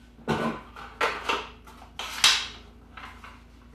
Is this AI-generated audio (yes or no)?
no